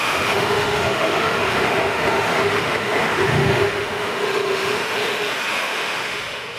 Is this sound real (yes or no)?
no